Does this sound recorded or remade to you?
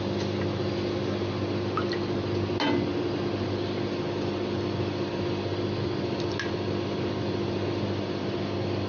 recorded